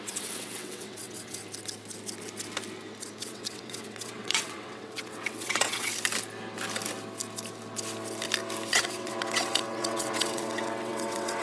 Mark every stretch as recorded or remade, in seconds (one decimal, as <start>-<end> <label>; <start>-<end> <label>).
0.0-1.4 remade; 1.4-3.2 recorded; 3.2-5.9 remade; 5.9-8.7 recorded; 8.7-11.4 remade